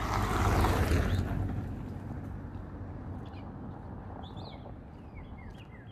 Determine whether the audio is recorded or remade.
recorded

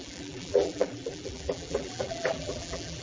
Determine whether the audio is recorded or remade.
remade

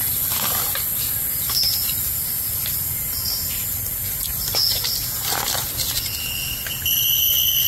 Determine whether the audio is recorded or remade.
recorded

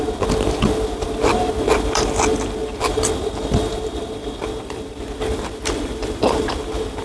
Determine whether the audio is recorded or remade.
recorded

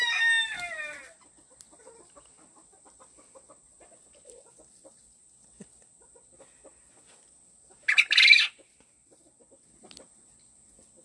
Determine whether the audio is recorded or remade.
recorded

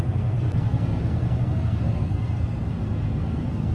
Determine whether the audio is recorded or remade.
remade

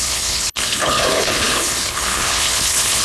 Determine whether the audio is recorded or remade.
remade